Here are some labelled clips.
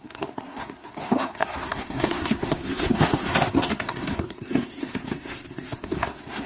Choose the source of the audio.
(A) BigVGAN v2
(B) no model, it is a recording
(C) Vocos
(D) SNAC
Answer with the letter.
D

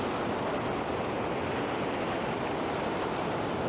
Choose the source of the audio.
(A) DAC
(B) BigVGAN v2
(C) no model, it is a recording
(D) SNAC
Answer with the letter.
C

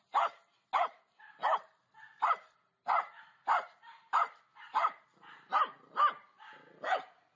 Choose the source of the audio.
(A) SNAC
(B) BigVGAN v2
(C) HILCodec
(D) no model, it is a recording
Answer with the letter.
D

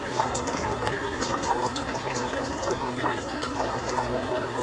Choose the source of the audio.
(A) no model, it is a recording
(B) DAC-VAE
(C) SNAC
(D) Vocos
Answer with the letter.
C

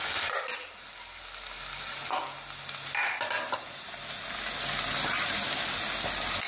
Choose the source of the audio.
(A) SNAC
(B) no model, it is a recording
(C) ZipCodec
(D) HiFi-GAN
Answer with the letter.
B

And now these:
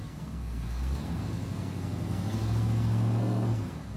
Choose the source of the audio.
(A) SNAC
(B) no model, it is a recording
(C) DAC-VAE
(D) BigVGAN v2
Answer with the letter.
A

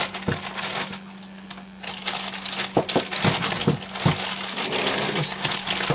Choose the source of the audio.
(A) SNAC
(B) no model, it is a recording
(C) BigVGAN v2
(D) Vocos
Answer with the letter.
B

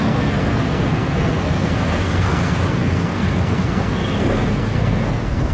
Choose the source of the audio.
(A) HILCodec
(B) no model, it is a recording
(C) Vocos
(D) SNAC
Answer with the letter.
D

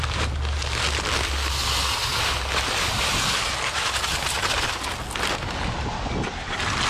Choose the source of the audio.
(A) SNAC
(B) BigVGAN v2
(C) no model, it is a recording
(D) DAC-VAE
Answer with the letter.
C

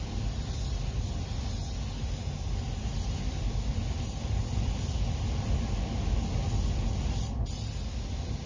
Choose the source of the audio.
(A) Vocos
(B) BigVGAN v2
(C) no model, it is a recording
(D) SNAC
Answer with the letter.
C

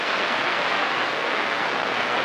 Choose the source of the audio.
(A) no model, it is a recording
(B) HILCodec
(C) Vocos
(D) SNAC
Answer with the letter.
D